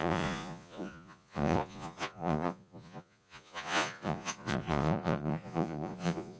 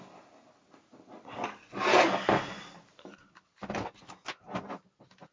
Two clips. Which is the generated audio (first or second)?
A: first